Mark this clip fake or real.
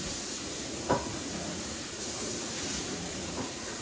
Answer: fake